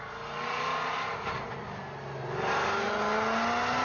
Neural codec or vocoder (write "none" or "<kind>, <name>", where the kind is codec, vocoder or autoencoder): none